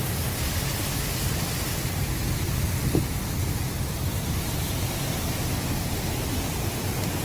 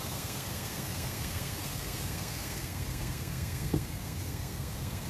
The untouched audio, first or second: first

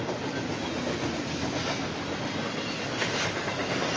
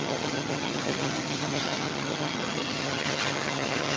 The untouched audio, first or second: first